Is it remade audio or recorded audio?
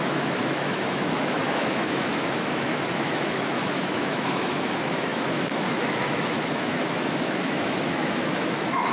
remade